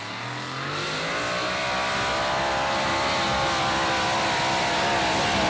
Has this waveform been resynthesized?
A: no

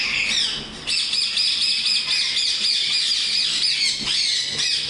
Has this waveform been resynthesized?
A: no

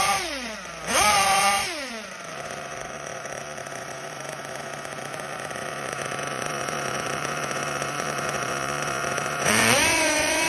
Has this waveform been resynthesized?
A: yes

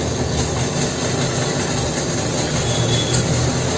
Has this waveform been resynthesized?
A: no